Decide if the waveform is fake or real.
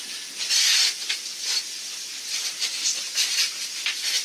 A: real